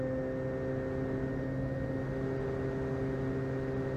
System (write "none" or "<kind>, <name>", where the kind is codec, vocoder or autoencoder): none